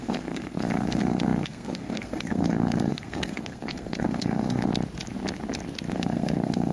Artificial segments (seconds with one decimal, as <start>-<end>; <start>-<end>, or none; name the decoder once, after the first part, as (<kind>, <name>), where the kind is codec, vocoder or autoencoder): 0.0-4.7 (codec, SNAC); 5.9-6.7